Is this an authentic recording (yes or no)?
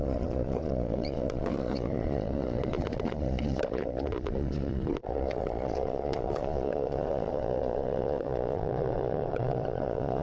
no